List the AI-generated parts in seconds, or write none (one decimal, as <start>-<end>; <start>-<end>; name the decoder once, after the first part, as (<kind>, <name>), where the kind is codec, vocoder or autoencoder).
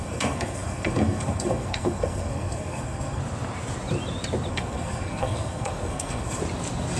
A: 0.0-3.2 (codec, SNAC); 4.5-6.4